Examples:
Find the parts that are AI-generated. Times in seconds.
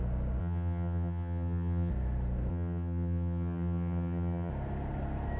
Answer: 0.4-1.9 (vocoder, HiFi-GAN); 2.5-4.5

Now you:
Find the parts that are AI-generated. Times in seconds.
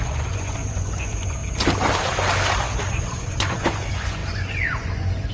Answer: 0.0-1.4 (vocoder, Vocos); 2.9-5.3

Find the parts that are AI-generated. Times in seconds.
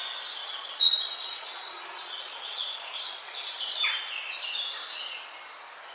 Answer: 0.4-3.9 (vocoder, Vocos)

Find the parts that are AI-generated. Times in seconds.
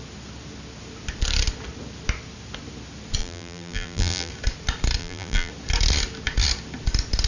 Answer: 3.2-4.3 (vocoder, BigVGAN v2); 5.0-5.5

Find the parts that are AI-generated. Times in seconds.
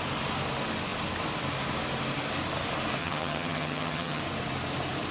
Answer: 3.0-4.2 (vocoder, HiFi-GAN)